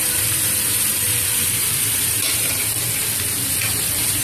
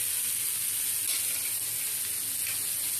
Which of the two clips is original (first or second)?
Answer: second